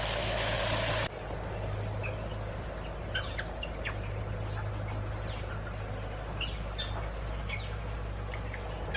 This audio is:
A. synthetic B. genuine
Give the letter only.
B